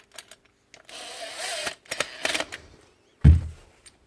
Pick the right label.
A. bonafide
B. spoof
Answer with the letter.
A